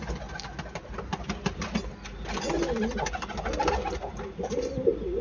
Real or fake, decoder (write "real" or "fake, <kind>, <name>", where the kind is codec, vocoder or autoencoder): real